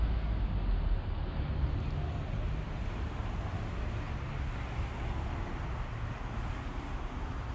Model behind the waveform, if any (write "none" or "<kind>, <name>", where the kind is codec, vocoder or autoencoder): none